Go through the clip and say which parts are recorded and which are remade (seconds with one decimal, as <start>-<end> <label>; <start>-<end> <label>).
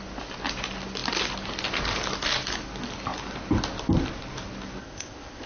0.0-4.8 recorded; 4.8-5.5 remade